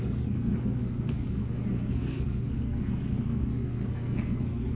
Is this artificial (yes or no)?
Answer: yes